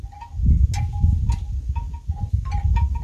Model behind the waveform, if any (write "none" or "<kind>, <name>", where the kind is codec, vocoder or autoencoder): none